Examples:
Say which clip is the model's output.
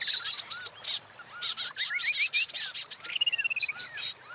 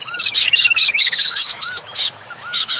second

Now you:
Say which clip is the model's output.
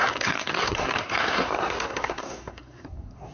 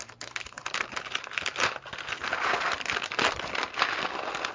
first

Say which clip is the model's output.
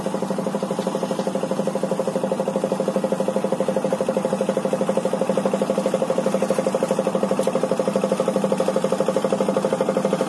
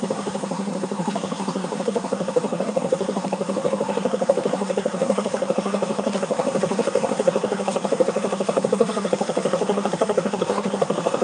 second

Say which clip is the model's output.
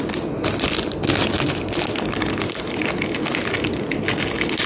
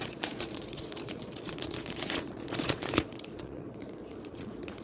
second